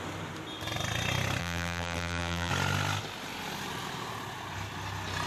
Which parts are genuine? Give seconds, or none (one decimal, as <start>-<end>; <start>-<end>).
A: 0.0-1.4; 2.5-5.3